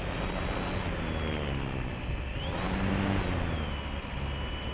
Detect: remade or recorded recorded